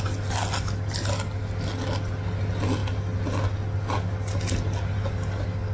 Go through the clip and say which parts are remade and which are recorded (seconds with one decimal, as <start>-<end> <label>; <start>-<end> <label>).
0.0-5.7 recorded